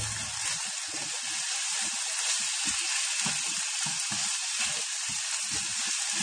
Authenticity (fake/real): real